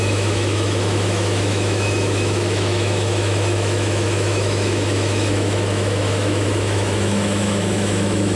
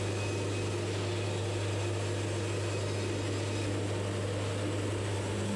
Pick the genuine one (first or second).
second